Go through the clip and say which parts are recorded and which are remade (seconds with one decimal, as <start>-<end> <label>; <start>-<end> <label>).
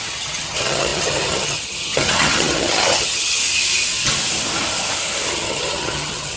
0.0-3.4 remade; 3.4-5.3 recorded; 5.3-6.4 remade